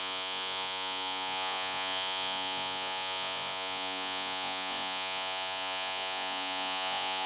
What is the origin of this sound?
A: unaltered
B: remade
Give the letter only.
B